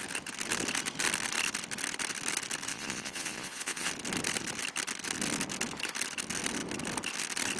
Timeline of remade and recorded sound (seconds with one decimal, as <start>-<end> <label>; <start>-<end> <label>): 0.0-2.7 recorded; 2.7-3.9 remade; 3.9-7.6 recorded